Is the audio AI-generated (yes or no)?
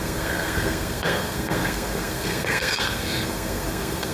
yes